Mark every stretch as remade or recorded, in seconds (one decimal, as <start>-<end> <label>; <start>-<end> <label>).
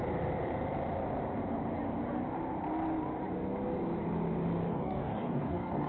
0.0-4.7 recorded; 4.7-5.9 remade